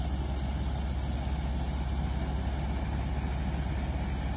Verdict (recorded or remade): recorded